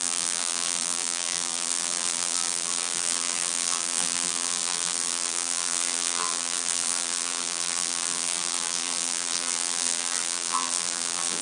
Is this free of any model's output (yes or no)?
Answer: no